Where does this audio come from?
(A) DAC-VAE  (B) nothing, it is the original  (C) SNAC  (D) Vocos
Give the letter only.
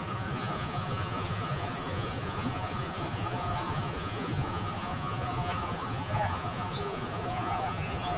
D